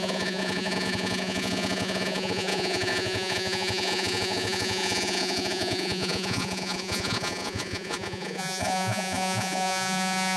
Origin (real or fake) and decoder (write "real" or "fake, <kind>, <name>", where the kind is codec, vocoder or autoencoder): fake, vocoder, Vocos